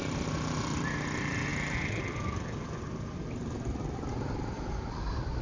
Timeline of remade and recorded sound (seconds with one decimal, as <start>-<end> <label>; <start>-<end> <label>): 0.0-5.4 recorded